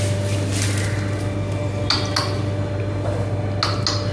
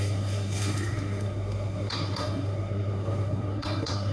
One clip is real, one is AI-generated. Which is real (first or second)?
first